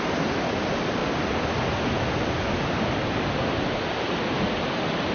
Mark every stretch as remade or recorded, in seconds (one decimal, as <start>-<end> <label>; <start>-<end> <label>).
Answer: 0.0-5.1 recorded

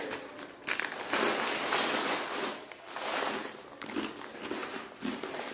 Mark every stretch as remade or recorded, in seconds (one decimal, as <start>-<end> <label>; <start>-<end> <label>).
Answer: 0.0-3.4 recorded; 3.4-3.9 remade; 3.9-4.6 recorded; 4.6-5.5 remade

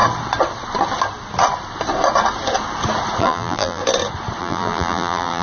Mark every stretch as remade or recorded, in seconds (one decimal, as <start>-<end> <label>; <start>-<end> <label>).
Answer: 0.0-3.2 recorded; 3.2-3.8 remade; 3.8-4.4 recorded; 4.4-5.4 remade

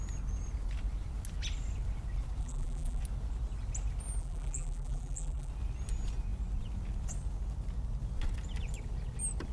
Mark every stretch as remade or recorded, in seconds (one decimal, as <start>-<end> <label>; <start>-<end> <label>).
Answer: 0.0-2.4 recorded; 2.4-3.0 remade; 3.0-4.2 recorded; 4.2-5.5 remade; 5.5-9.5 recorded

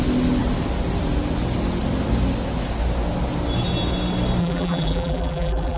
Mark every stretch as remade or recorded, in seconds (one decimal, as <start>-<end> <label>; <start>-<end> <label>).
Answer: 0.0-4.4 recorded; 4.4-5.8 remade

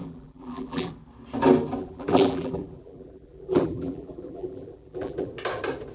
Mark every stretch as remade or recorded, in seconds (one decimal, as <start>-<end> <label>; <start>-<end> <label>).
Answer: 0.0-0.9 remade; 0.9-1.8 recorded; 1.8-5.3 remade; 5.3-5.9 recorded

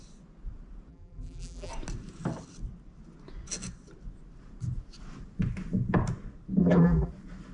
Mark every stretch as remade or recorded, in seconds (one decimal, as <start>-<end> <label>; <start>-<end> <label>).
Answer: 0.0-0.9 recorded; 0.9-1.7 remade; 1.7-6.6 recorded; 6.6-7.1 remade; 7.1-7.5 recorded